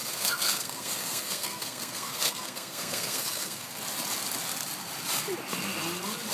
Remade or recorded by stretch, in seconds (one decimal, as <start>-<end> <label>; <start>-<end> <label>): 0.0-3.8 remade; 3.8-6.3 recorded